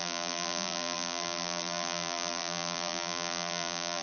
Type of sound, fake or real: fake